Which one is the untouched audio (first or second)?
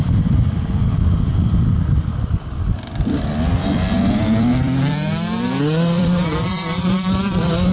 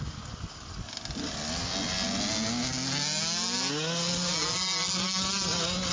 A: second